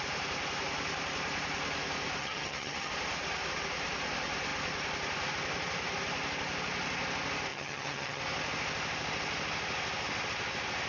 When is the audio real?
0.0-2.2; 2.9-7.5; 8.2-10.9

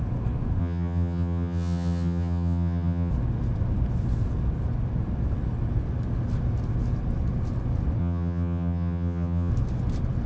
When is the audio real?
0.0-0.6; 3.1-8.0; 9.5-10.3

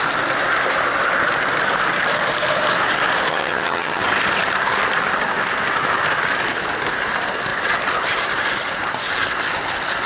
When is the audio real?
0.0-3.3; 4.0-10.1

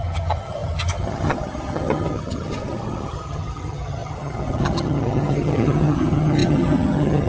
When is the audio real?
none

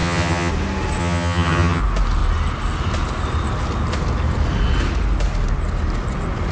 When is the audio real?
0.5-1.0; 1.8-6.5

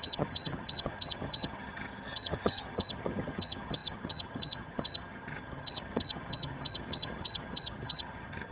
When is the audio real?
none